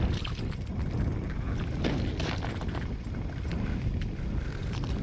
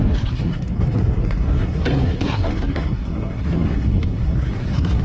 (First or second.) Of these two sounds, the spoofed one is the second